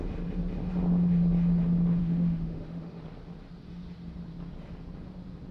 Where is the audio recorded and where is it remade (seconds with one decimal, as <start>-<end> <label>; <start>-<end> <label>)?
0.0-2.0 recorded; 2.0-3.0 remade; 3.0-5.5 recorded